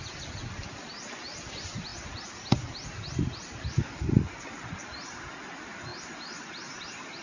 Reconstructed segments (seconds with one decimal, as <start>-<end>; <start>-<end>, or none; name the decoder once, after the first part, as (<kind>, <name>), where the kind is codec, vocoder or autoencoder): none